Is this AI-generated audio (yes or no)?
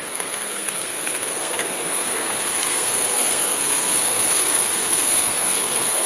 yes